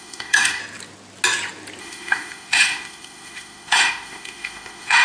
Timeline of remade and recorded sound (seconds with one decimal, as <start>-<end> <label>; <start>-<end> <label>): 0.0-0.6 remade; 0.6-1.8 recorded; 1.8-5.0 remade